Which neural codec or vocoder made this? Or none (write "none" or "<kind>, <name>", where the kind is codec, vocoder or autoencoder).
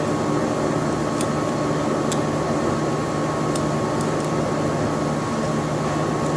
none